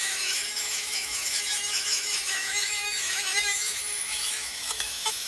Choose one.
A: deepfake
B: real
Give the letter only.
A